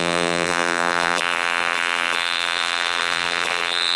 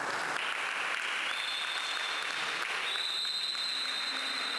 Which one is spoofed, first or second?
first